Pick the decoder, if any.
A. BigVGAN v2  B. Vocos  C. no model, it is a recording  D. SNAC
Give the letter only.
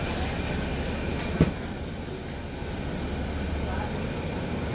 C